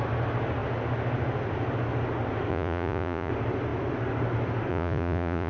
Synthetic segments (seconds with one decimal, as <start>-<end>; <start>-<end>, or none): 2.5-3.3; 4.7-5.5